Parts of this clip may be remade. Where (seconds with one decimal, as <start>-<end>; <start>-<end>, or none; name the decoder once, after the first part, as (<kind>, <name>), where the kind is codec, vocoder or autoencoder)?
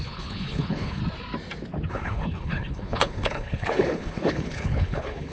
0.0-1.0 (codec, HILCodec); 1.9-5.3